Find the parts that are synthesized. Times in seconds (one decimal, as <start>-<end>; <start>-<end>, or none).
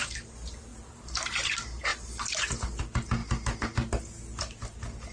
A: 0.7-1.4